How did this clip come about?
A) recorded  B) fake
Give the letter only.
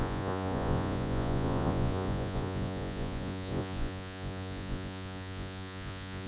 B